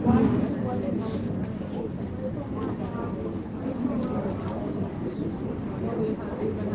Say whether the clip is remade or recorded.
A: recorded